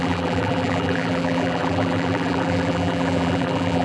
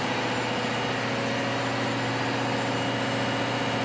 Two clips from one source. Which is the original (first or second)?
second